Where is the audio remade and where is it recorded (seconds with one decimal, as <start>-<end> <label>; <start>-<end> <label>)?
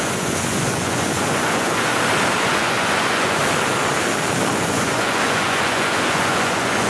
0.0-1.9 remade; 1.9-2.4 recorded; 2.4-3.4 remade; 3.4-4.5 recorded; 4.5-6.9 remade